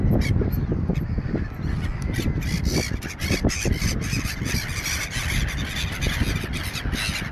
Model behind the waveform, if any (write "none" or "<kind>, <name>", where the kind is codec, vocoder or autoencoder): none